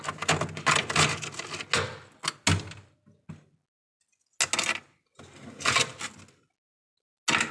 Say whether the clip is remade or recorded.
recorded